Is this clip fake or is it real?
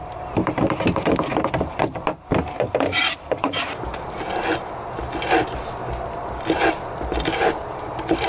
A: real